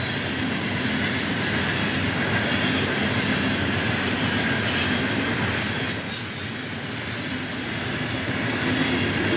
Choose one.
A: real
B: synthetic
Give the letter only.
A